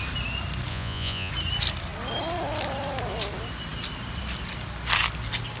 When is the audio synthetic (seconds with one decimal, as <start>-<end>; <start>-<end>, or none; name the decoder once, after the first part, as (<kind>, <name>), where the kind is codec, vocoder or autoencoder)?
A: 0.7-1.3 (vocoder, Vocos)